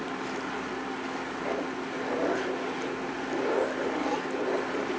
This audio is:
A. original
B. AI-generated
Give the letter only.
A